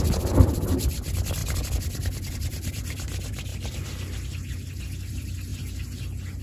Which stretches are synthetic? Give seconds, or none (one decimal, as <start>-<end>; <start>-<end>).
0.0-1.4; 2.3-3.5; 4.8-5.5